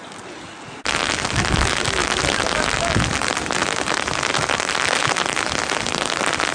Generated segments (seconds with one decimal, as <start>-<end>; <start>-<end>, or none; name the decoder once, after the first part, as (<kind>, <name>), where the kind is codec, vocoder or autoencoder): none